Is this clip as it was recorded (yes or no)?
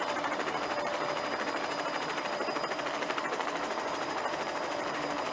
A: no